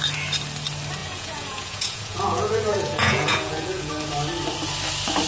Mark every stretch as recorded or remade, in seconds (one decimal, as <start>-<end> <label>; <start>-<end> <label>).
0.0-1.0 recorded; 1.0-3.9 remade; 3.9-5.3 recorded